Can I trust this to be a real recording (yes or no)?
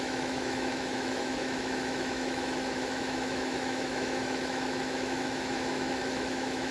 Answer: no